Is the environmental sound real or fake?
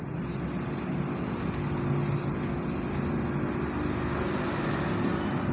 real